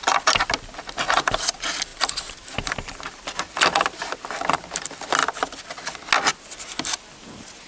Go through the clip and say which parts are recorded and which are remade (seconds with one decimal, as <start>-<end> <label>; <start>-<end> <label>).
0.0-7.7 recorded

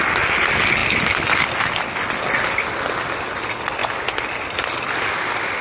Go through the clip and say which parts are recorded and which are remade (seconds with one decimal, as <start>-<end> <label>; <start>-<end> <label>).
0.0-5.6 recorded

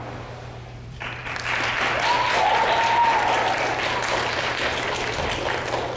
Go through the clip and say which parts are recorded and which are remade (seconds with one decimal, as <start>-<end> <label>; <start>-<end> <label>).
0.0-6.0 recorded

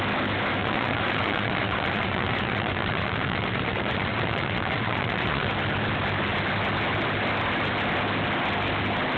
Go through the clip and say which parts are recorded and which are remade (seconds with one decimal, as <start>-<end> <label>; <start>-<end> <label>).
0.0-0.6 recorded; 0.6-5.5 remade; 5.5-9.2 recorded

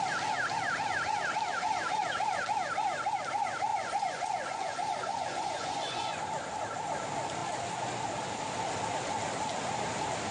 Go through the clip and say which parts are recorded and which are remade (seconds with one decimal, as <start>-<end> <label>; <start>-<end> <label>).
0.0-3.7 recorded; 3.7-6.2 remade; 6.2-10.3 recorded

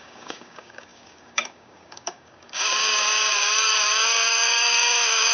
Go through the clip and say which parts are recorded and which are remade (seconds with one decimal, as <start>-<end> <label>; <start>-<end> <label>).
0.0-5.3 remade

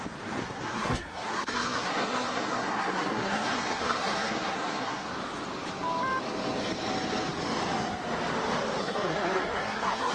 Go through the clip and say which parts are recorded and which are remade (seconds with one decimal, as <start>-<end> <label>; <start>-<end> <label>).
0.0-0.4 recorded; 0.4-5.1 remade; 5.1-8.8 recorded; 8.8-10.1 remade